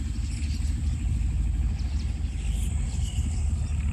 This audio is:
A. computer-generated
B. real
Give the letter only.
B